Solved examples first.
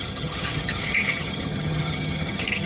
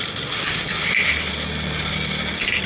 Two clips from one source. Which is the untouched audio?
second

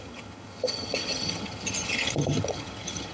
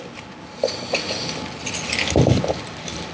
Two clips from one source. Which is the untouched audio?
second